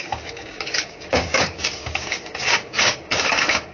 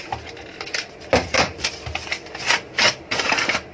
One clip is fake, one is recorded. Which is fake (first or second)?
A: first